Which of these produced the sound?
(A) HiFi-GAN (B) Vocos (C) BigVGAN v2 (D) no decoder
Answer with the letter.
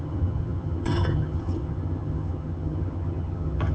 A